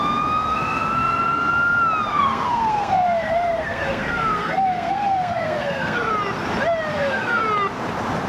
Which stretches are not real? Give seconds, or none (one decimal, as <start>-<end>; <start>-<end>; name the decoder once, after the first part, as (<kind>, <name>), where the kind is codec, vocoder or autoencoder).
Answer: 0.5-1.5 (codec, SNAC); 2.1-6.1; 6.9-7.4